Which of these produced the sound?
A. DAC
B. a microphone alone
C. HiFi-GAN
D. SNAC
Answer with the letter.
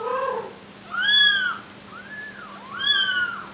B